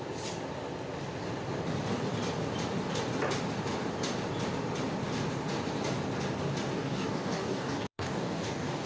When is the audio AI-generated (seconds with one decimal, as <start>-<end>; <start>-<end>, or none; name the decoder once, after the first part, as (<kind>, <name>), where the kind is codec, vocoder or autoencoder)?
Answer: 6.7-8.9 (codec, DAC)